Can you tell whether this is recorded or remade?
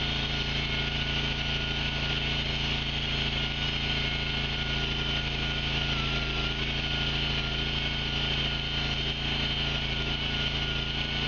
recorded